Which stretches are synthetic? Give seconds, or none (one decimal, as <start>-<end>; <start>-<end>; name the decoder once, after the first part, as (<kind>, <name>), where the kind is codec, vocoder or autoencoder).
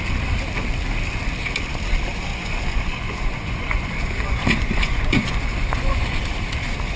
2.3-6.2 (vocoder, Vocos)